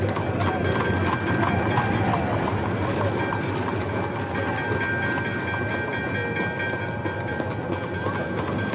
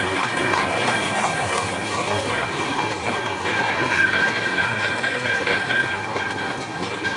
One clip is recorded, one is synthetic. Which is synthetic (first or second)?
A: second